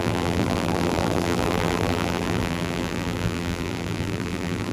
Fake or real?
fake